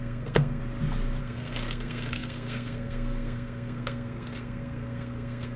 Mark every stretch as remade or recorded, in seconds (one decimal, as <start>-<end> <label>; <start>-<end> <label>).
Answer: 0.0-0.6 remade; 0.6-1.2 recorded; 1.2-5.6 remade